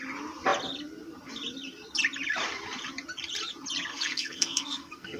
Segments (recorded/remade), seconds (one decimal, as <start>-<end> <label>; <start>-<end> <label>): 0.0-3.9 recorded; 3.9-5.2 remade